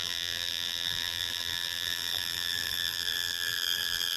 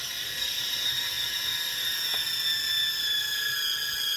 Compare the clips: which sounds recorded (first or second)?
second